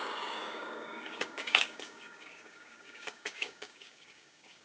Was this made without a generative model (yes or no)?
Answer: no